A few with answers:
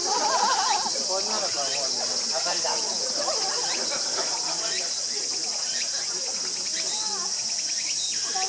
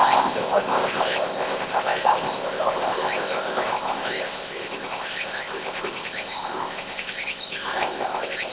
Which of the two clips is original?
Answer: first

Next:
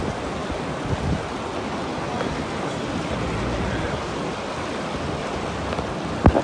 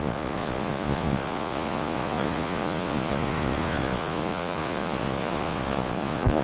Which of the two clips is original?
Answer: first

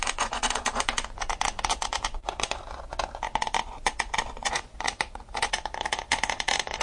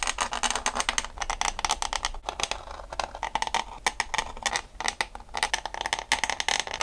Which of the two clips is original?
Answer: second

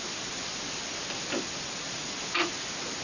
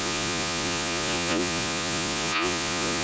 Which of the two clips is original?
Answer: first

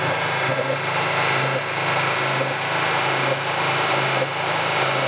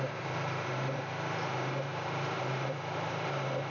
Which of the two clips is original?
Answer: first